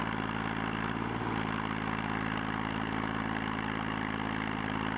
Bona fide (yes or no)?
yes